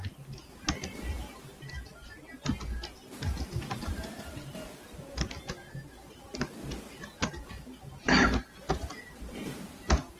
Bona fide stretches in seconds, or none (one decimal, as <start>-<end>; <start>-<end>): 0.0-10.2